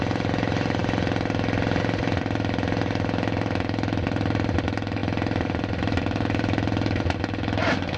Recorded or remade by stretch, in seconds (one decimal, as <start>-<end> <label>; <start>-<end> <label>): 0.0-8.0 recorded